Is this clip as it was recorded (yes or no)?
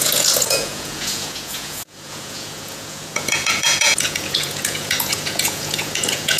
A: no